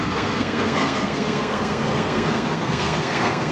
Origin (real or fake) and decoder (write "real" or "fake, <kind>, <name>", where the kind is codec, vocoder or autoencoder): fake, codec, SNAC